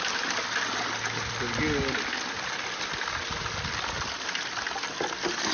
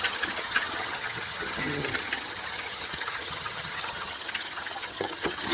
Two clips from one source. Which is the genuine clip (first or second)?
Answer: first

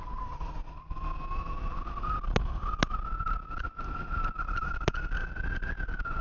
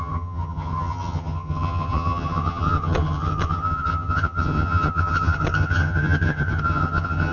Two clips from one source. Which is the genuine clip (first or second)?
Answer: first